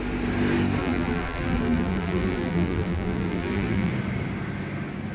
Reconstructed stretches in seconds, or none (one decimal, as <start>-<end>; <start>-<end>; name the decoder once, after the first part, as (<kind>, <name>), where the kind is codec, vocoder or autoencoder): 0.8-3.9 (vocoder, BigVGAN v2)